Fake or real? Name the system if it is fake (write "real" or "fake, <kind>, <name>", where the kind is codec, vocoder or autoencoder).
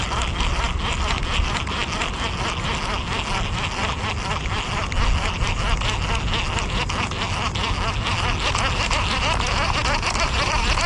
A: real